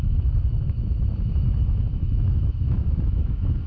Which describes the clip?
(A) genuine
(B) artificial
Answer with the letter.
B